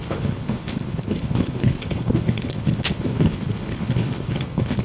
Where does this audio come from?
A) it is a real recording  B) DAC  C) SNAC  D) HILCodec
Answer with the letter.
D